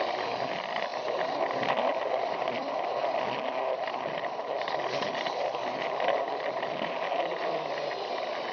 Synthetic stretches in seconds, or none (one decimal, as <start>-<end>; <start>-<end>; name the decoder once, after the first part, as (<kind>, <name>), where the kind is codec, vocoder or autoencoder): none